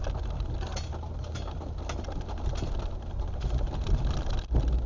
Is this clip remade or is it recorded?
recorded